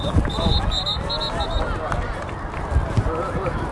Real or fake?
real